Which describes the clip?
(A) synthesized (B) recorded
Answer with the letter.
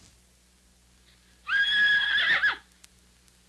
B